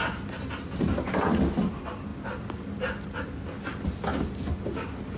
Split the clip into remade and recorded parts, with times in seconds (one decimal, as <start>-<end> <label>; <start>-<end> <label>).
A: 0.0-5.2 recorded